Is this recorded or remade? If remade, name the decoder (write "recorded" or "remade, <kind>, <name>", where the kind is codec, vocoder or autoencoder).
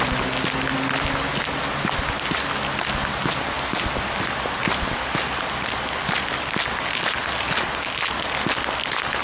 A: recorded